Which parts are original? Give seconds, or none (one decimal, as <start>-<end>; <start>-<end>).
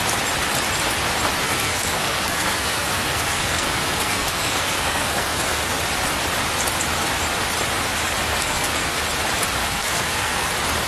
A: 0.0-1.4; 5.8-8.3; 9.0-9.6; 10.5-10.9